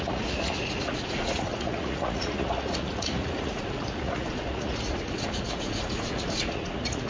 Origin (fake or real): fake